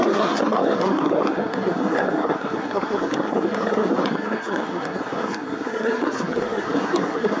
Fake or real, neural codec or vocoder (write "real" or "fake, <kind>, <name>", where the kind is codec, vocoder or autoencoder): fake, codec, SNAC